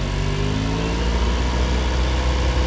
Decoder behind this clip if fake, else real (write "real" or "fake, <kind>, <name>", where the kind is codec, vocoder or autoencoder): real